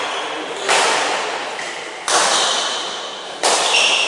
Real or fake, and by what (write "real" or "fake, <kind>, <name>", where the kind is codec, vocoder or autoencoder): real